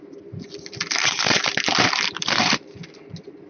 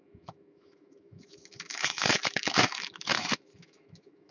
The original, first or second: first